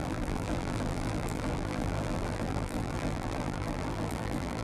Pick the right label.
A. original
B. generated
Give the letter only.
B